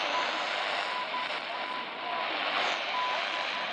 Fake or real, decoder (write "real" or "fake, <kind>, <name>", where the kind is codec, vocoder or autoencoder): real